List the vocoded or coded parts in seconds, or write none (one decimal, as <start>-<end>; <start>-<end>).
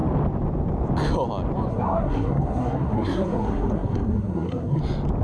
1.7-4.8